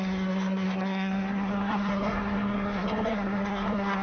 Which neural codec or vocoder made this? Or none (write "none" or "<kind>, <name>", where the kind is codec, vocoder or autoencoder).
codec, SNAC